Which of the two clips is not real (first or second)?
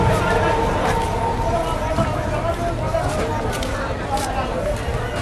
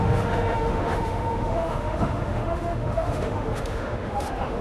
second